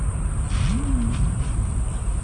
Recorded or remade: remade